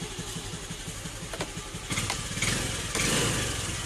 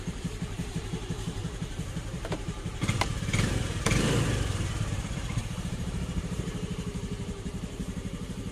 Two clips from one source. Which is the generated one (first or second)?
second